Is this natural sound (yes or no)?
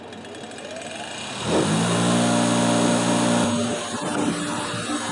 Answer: yes